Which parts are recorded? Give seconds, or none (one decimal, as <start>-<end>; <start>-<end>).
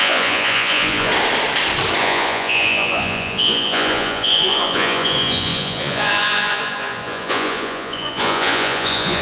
1.1-2.0